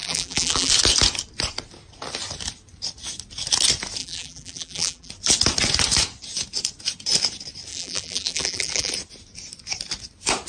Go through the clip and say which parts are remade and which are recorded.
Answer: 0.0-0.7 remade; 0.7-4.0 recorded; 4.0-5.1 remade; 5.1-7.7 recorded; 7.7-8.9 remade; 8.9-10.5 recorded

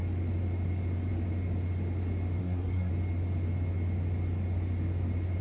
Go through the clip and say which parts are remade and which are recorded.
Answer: 0.0-2.4 recorded; 2.4-2.9 remade; 2.9-5.4 recorded

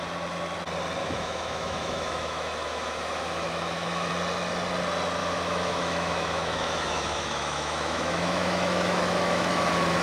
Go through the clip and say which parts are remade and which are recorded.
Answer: 0.0-1.0 recorded; 1.0-4.1 remade; 4.1-5.2 recorded; 5.2-10.0 remade

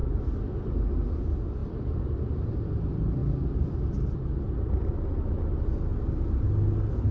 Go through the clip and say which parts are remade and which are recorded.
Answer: 0.0-0.7 remade; 0.7-1.6 recorded; 1.6-2.5 remade; 2.5-5.9 recorded; 5.9-6.5 remade; 6.5-7.1 recorded

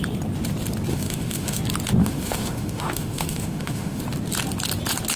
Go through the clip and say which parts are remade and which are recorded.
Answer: 0.0-0.9 recorded; 0.9-1.6 remade; 1.6-2.0 recorded; 2.0-4.0 remade; 4.0-5.2 recorded

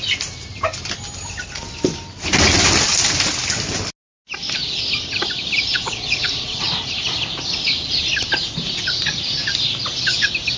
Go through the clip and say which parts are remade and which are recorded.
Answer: 0.0-5.7 recorded; 5.7-6.6 remade; 6.6-10.6 recorded